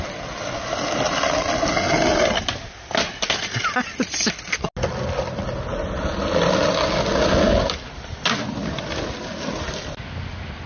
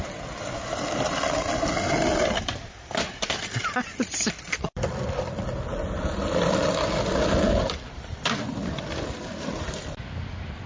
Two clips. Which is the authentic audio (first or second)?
first